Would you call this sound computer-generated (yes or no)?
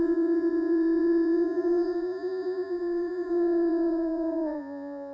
yes